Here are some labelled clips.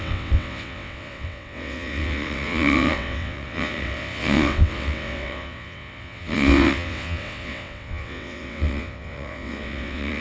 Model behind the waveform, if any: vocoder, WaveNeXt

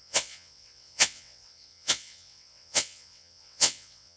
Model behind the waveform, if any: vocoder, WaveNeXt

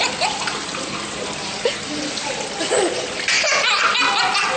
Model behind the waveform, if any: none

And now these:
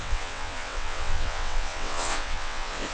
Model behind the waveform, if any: vocoder, WaveNeXt